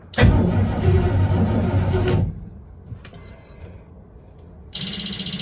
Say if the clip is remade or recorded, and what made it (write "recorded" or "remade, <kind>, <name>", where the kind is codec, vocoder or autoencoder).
recorded